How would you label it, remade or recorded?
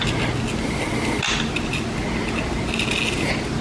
recorded